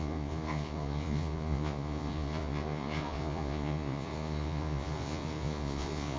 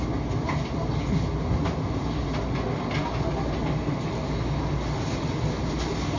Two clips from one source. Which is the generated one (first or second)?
first